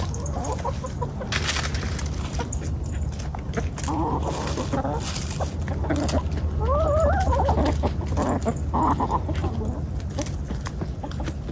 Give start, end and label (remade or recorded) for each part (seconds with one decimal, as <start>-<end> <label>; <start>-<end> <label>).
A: 0.0-11.5 recorded